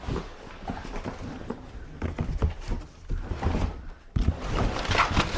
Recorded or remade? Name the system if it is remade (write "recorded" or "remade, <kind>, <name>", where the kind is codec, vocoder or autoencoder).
recorded